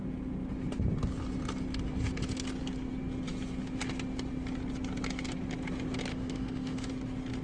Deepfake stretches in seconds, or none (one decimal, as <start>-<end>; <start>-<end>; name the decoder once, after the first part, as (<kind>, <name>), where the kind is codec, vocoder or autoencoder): 6.1-6.9 (autoencoder, DAC-VAE)